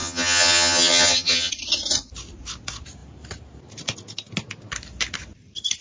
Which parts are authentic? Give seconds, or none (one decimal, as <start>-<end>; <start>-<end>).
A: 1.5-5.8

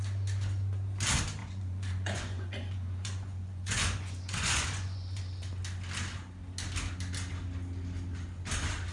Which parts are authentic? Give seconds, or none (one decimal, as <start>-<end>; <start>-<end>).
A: 0.0-1.4; 5.2-8.9

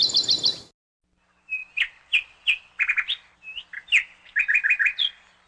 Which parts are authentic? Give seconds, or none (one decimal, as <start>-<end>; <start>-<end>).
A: 0.0-5.5